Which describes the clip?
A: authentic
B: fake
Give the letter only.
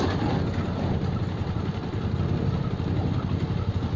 A